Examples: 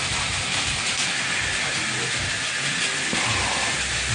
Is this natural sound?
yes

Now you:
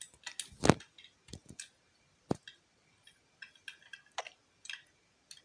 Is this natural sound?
yes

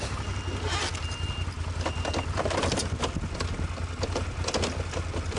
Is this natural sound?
yes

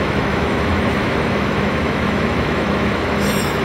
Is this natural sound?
no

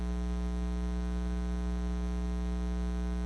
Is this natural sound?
yes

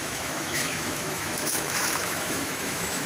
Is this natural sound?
no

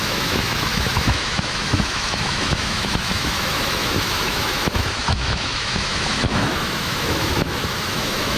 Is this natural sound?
no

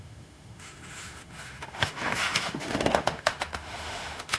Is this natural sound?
no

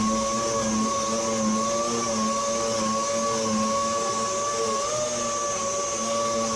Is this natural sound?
yes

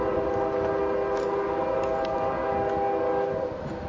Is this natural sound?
yes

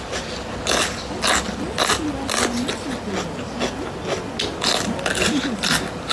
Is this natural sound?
yes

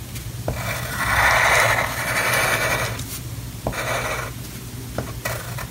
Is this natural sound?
yes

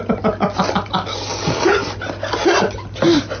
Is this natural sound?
yes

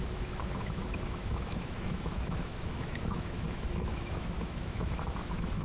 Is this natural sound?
no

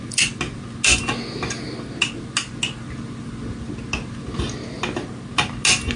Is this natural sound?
yes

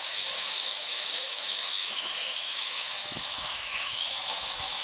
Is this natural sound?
no